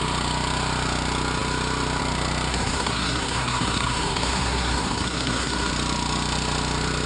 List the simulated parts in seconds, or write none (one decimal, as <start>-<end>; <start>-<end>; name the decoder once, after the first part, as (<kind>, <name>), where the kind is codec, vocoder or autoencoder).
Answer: 2.5-5.7 (codec, SNAC)

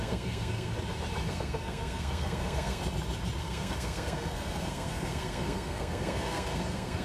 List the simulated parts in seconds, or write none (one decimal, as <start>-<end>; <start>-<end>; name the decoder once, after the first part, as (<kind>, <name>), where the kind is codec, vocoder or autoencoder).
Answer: 0.0-0.7 (codec, SNAC); 1.3-2.8; 3.4-7.0